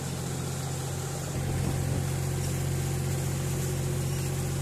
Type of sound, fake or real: real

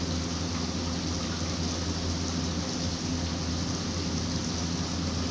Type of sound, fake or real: real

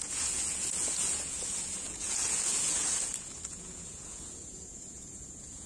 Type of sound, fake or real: fake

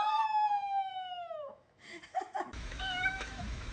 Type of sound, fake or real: fake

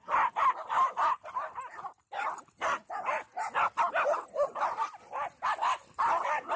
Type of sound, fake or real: real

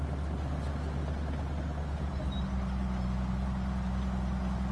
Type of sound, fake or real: real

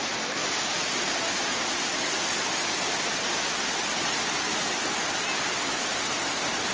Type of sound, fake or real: real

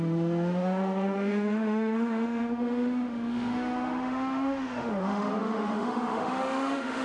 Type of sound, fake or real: fake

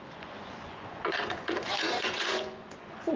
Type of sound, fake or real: fake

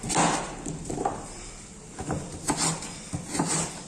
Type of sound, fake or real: real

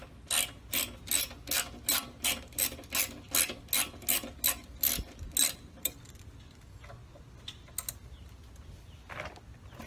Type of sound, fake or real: real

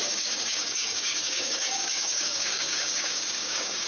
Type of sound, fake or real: fake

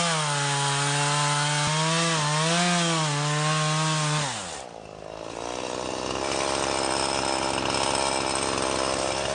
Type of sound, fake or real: real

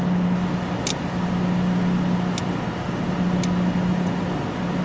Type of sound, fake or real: real